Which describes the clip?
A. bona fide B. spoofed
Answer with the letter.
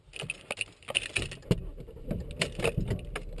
A